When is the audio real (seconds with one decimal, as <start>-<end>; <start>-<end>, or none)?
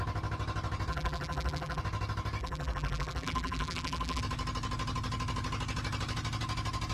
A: 0.0-0.9; 1.8-2.4; 4.2-6.9